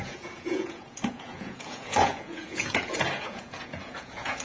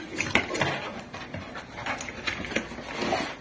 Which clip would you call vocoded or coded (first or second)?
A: first